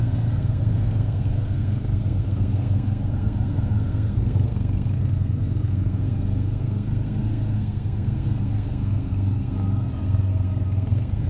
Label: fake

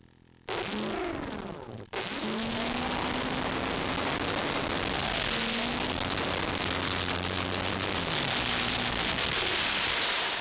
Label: real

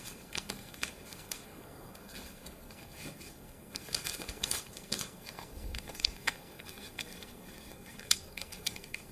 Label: fake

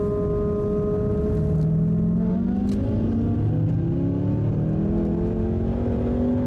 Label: real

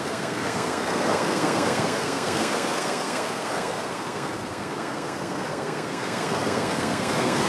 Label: fake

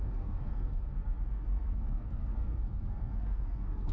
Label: fake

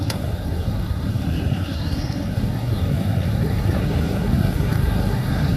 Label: fake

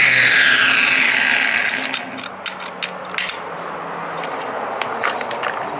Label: real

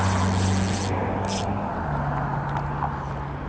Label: real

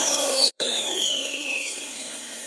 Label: fake